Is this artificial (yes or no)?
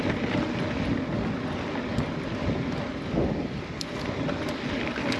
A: no